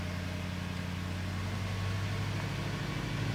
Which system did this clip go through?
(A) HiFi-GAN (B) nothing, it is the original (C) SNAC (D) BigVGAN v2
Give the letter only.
B